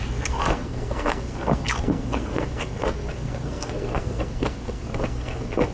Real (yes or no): no